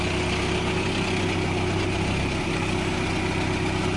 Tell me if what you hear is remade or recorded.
recorded